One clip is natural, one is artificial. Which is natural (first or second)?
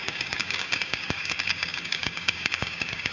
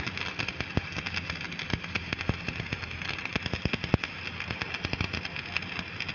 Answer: second